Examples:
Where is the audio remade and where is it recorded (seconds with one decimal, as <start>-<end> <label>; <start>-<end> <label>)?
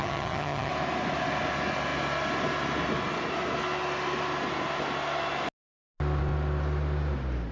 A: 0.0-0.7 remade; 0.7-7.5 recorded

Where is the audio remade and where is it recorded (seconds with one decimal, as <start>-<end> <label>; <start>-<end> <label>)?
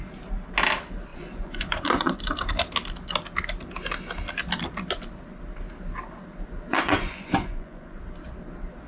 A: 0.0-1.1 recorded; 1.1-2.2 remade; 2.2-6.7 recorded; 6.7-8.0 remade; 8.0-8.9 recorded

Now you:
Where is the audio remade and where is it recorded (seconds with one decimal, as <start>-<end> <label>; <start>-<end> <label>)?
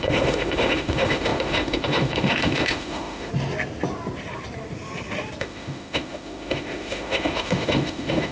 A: 0.0-3.3 remade; 3.3-5.4 recorded; 5.4-8.3 remade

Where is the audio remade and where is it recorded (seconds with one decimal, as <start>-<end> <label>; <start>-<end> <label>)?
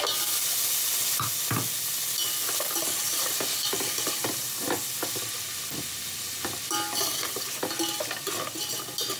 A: 0.0-3.1 recorded; 3.1-4.9 remade; 4.9-9.2 recorded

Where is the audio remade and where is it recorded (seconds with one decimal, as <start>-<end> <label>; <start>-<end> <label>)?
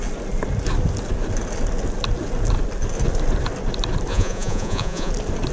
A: 0.0-4.1 recorded; 4.1-5.1 remade; 5.1-5.5 recorded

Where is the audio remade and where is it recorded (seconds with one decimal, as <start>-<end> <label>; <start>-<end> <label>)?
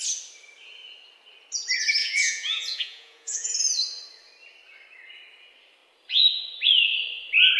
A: 0.0-2.0 recorded; 2.0-3.5 remade; 3.5-7.6 recorded